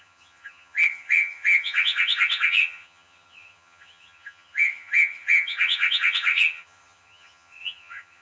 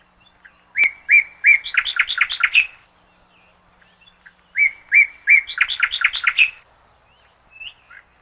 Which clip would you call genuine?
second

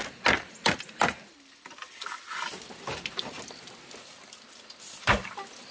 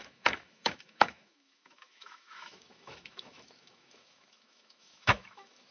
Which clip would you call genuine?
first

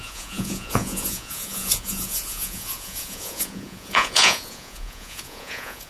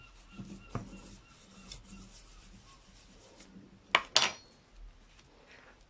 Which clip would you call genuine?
second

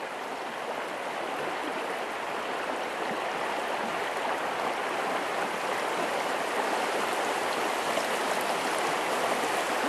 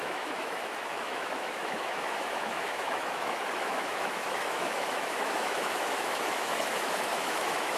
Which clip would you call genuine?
first